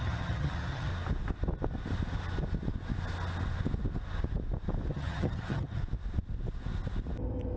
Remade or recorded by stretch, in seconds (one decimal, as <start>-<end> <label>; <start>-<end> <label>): 0.0-0.9 remade; 0.9-4.9 recorded; 4.9-5.8 remade; 5.8-7.6 recorded